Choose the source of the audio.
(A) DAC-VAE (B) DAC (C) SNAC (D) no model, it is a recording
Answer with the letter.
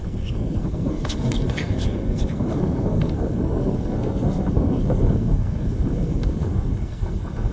C